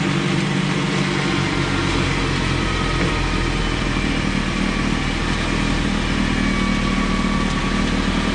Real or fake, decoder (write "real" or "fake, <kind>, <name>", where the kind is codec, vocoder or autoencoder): real